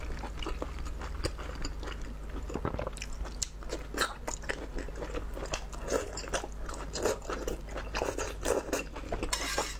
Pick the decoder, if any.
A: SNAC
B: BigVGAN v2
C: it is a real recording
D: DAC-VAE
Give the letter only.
C